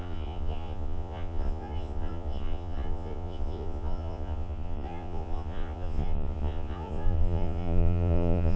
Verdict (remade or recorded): remade